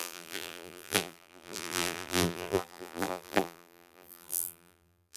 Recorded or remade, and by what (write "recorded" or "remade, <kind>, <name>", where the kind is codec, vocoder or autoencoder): remade, vocoder, BigVGAN v2